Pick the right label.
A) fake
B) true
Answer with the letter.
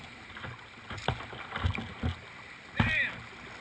B